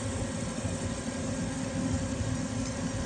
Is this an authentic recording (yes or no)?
yes